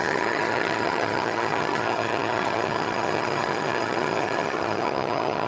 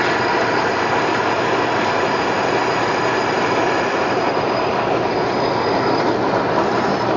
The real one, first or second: second